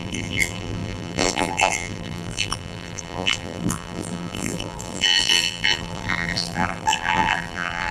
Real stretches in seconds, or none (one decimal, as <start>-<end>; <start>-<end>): none